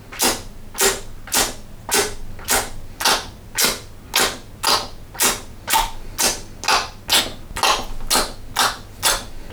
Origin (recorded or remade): recorded